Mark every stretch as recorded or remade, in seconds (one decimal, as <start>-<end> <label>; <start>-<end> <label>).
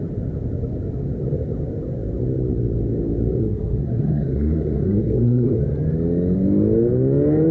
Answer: 0.0-3.4 recorded; 3.4-5.6 remade; 5.6-7.5 recorded